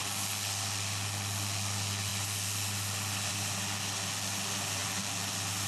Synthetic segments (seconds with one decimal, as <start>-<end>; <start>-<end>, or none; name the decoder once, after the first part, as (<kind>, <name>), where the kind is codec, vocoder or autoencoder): none